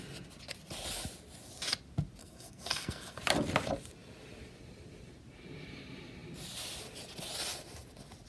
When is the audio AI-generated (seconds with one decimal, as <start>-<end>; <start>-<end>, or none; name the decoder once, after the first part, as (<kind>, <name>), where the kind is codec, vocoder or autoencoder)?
2.2-3.2 (codec, SNAC)